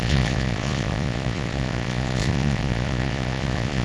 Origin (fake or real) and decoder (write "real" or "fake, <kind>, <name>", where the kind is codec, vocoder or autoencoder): fake, vocoder, Vocos